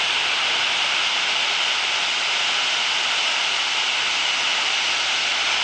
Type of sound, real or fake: real